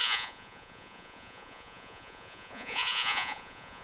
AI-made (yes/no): yes